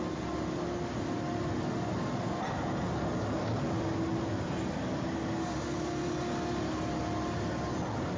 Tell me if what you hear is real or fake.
real